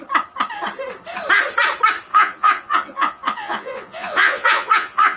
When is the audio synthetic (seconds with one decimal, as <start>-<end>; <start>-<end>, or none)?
2.1-5.2